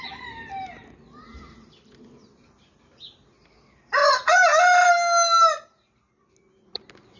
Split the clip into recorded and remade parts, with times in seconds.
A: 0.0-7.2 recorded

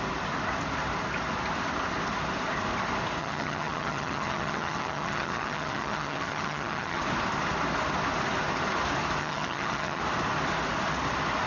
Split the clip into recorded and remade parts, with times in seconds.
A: 0.0-3.2 recorded; 3.2-7.0 remade; 7.0-9.2 recorded; 9.2-10.0 remade; 10.0-11.5 recorded

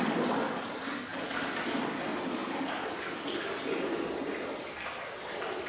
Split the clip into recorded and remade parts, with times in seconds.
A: 0.0-5.7 recorded